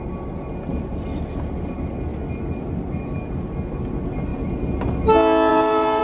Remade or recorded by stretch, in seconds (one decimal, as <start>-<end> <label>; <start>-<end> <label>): 0.0-5.5 recorded; 5.5-6.0 remade